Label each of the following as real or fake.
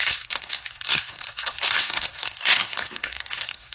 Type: fake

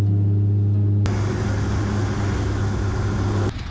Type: real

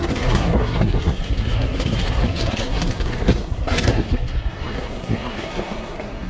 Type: fake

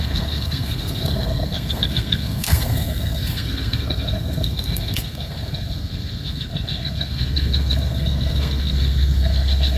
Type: fake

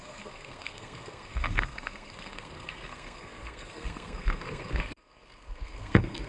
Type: fake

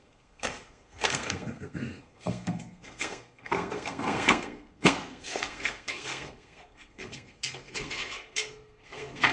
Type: fake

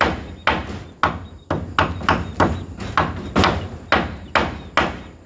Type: real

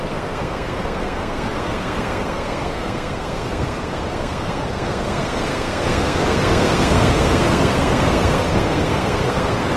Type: fake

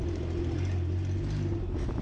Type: real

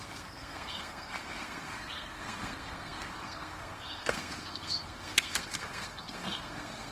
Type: fake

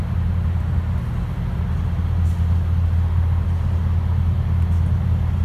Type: real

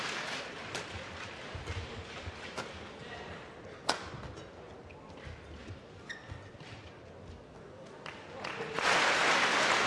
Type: real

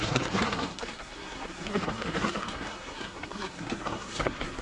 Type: fake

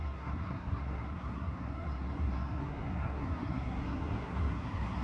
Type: fake